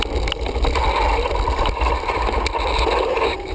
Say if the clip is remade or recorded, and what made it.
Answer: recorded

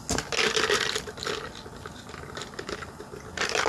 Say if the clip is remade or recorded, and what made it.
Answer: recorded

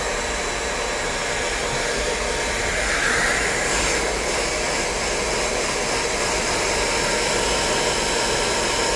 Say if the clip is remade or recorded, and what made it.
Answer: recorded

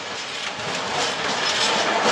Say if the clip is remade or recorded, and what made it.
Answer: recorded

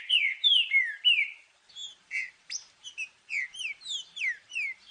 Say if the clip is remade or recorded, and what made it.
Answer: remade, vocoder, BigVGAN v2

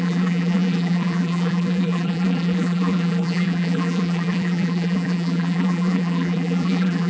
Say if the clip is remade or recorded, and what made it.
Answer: remade, vocoder, BigVGAN v2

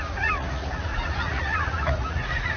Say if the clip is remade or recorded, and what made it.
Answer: remade, vocoder, Vocos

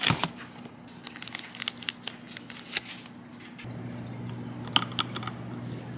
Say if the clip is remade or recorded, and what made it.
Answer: recorded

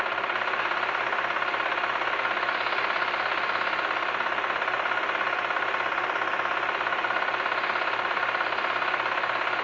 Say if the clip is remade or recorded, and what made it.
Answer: recorded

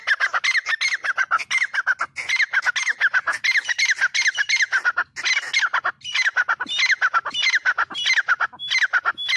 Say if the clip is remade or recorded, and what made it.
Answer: recorded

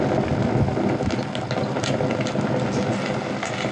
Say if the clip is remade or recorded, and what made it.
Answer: recorded